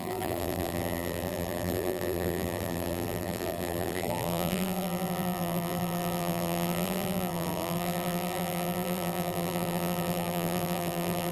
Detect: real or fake fake